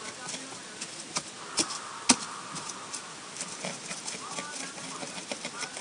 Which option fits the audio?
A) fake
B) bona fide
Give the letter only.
B